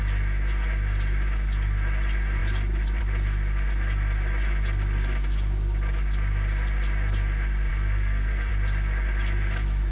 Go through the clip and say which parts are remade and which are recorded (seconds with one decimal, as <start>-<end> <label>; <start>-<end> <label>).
0.0-7.7 recorded; 7.7-8.5 remade; 8.5-9.9 recorded